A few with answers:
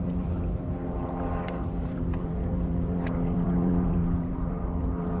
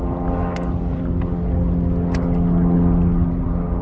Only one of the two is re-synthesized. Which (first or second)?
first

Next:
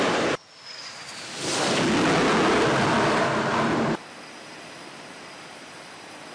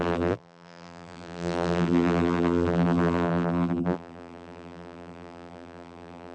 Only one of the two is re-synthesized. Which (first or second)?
second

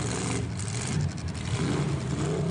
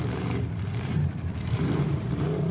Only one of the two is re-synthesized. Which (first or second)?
second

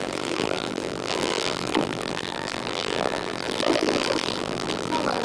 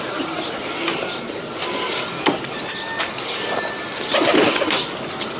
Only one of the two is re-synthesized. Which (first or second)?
first